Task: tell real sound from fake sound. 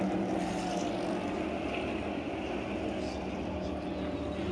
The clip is real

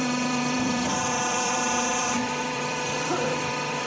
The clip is fake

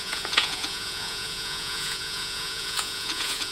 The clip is fake